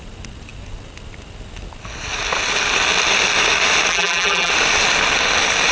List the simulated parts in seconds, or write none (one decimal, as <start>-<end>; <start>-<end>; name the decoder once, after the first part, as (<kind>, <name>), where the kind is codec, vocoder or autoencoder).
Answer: 3.9-4.5 (vocoder, BigVGAN v2)